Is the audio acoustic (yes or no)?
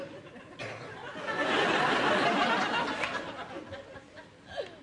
yes